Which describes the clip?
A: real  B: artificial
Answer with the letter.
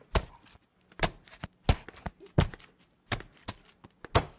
A